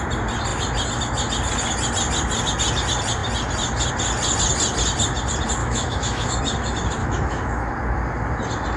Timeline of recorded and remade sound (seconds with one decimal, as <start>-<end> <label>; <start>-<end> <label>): 0.0-5.6 recorded; 5.6-6.4 remade; 6.4-7.0 recorded; 7.0-7.7 remade; 7.7-8.8 recorded